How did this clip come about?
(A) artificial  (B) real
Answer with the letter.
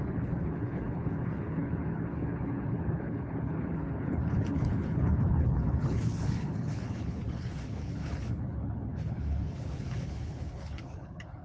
A